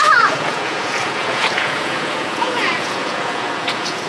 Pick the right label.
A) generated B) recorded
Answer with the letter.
A